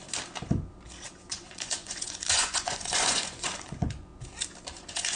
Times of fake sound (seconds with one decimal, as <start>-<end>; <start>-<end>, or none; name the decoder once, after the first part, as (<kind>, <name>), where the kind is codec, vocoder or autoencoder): 1.3-4.1 (vocoder, Vocos); 4.8-5.2

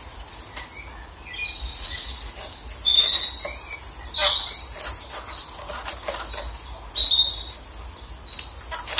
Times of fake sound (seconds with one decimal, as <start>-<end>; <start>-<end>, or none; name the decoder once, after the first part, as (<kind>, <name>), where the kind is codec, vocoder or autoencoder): 1.7-2.2 (vocoder, Vocos)